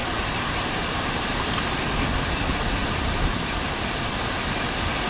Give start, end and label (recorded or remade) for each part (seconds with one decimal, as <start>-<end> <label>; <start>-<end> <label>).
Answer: 0.0-0.8 remade; 0.8-2.8 recorded; 2.8-3.5 remade; 3.5-5.1 recorded